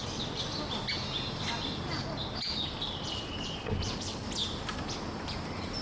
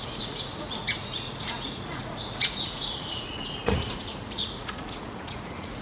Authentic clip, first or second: first